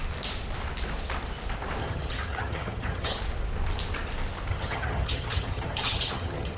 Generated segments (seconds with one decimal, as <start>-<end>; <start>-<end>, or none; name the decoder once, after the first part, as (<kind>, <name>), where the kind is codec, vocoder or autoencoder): 1.8-3.2 (vocoder, HiFi-GAN); 4.5-6.6